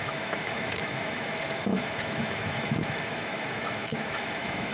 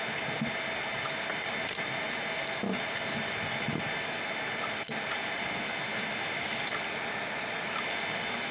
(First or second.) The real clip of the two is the second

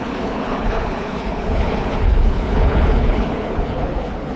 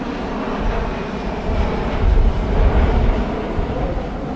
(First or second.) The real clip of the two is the second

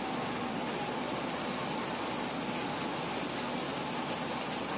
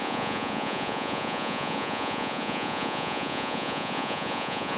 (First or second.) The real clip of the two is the first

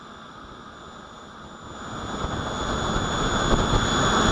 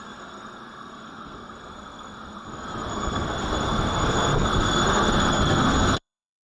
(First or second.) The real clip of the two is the first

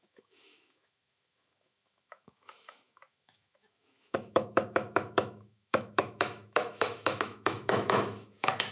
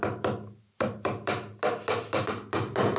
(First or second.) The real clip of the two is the second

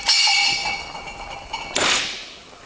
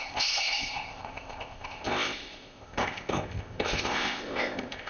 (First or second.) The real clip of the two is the first